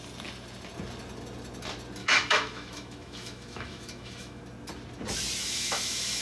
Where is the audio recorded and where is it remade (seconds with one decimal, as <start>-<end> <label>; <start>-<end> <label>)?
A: 0.0-2.0 recorded; 2.0-4.4 remade; 4.4-5.4 recorded; 5.4-6.2 remade